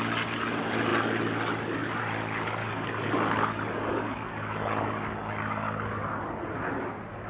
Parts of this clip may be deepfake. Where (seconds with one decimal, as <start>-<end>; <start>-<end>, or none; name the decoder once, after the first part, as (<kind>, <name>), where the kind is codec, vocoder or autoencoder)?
2.6-6.0 (codec, DAC)

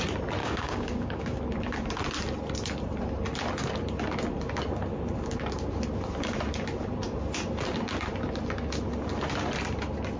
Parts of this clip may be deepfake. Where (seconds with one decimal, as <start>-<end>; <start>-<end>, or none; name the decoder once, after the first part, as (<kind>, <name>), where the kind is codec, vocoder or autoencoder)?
0.4-1.4 (codec, DAC)

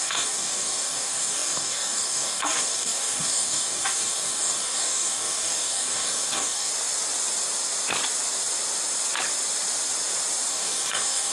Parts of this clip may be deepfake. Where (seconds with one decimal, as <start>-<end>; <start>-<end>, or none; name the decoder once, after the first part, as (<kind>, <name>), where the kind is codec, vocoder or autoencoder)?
0.0-6.7 (codec, DAC); 10.5-11.3

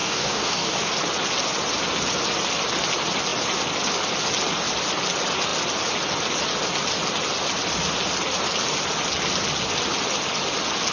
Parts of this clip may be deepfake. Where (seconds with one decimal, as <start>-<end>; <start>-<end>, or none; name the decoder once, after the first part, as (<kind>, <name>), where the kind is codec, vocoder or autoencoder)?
0.0-0.9 (codec, DAC)

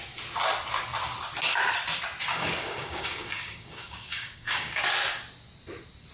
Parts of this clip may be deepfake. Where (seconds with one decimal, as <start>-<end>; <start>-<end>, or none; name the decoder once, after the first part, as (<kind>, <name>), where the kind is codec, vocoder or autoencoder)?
2.3-4.8 (codec, DAC)